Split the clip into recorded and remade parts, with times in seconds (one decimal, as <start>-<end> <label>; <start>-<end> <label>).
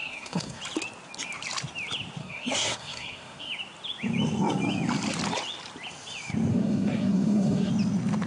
0.0-0.6 remade; 0.6-2.2 recorded; 2.2-3.5 remade; 3.5-6.5 recorded; 6.5-7.7 remade; 7.7-8.3 recorded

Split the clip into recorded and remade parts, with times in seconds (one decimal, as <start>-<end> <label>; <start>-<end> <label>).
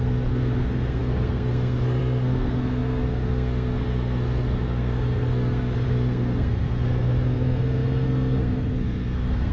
0.0-9.5 remade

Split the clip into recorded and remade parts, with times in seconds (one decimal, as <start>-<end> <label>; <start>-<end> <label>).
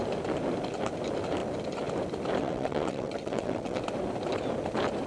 0.0-2.4 recorded; 2.4-3.8 remade; 3.8-5.1 recorded